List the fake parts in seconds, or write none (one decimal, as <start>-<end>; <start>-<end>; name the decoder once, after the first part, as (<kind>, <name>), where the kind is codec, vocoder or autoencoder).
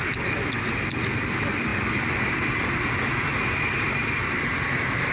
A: none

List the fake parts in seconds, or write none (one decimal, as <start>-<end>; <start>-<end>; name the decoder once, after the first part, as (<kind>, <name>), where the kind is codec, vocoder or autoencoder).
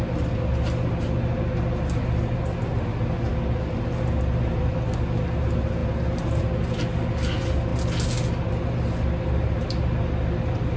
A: none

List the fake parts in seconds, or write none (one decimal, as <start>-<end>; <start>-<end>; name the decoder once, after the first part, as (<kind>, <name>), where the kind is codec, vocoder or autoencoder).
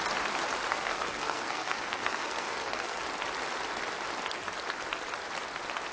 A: 0.7-3.0 (codec, SNAC)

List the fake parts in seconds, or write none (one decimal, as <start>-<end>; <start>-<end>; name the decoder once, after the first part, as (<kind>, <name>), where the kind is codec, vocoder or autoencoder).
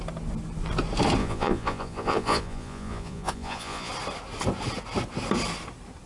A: 1.2-3.9 (vocoder, Vocos)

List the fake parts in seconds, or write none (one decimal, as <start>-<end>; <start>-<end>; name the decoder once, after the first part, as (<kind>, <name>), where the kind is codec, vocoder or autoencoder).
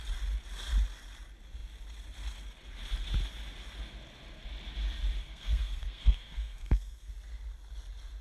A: 5.2-7.1 (codec, SNAC)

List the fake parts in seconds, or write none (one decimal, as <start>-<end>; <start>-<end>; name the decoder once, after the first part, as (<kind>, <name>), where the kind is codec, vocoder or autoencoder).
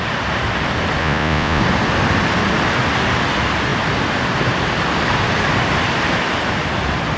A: 1.0-1.6 (vocoder, Vocos)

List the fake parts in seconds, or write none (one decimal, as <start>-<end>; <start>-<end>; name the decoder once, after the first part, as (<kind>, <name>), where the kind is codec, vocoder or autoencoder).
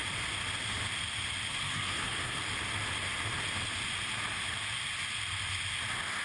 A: 1.5-2.4 (codec, SNAC)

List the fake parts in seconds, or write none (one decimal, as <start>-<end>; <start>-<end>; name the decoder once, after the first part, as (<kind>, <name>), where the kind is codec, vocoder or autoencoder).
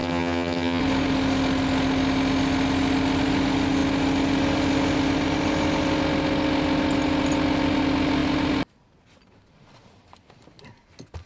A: 0.0-0.8 (vocoder, HiFi-GAN)